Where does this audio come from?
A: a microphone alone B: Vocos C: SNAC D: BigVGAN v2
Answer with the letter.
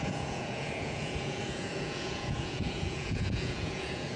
B